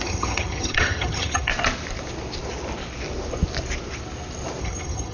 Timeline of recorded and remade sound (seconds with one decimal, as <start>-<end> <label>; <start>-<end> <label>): 0.0-1.5 remade; 1.5-4.6 recorded; 4.6-5.1 remade